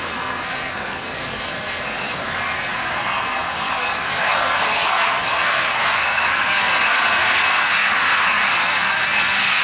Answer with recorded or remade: remade